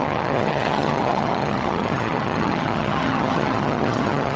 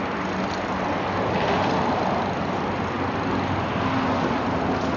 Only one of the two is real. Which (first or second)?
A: second